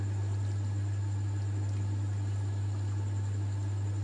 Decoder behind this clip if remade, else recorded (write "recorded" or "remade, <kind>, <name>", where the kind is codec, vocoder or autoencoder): recorded